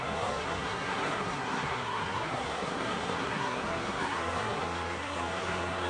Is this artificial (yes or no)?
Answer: yes